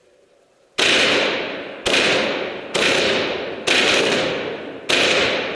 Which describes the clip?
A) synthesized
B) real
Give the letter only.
B